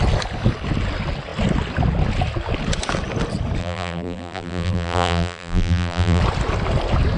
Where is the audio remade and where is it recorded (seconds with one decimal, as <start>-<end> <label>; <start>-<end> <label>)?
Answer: 0.0-3.6 recorded; 3.6-6.2 remade; 6.2-7.2 recorded